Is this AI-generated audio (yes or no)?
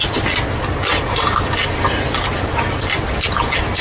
no